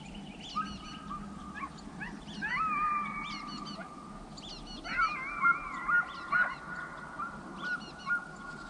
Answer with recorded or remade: recorded